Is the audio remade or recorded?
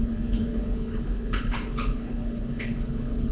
remade